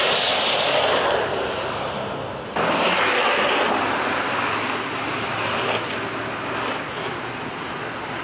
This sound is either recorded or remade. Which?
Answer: recorded